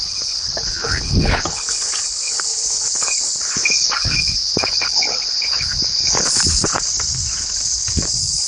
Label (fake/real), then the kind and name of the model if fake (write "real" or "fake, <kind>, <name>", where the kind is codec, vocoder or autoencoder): fake, codec, HILCodec